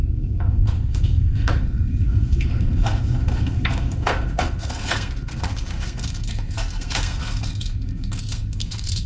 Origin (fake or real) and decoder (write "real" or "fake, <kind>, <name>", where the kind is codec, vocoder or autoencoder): fake, codec, SNAC